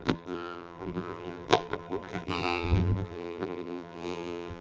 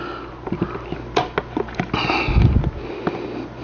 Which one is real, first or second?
second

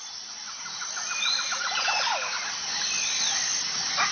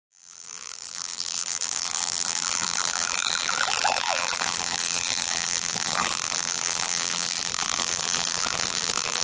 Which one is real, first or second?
first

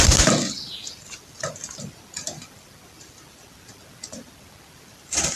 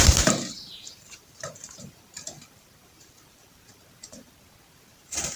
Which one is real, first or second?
first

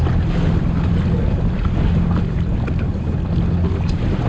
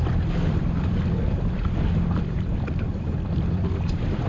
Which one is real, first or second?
first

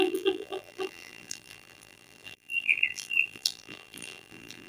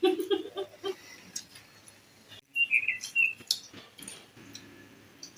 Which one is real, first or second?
second